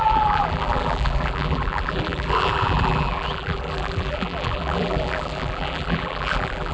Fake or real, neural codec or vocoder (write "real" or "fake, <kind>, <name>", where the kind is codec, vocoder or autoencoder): fake, vocoder, BigVGAN v2